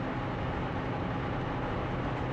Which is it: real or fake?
real